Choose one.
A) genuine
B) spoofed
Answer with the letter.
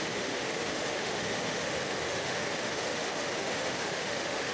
B